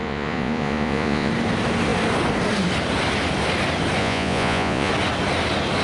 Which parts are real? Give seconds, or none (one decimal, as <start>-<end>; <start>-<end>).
1.3-4.0; 4.9-5.8